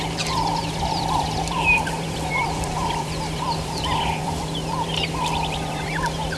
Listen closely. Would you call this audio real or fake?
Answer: fake